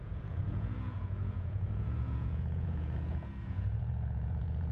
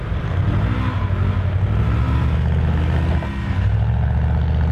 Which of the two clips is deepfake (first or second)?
first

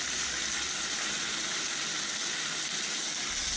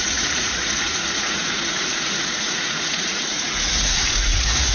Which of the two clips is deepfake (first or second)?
second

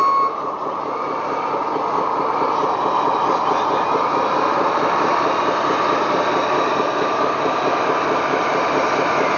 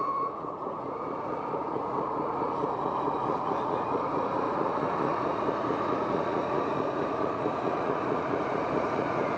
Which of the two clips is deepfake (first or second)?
second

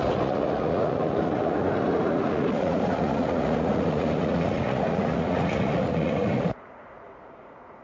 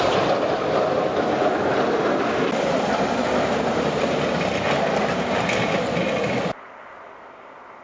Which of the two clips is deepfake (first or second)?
first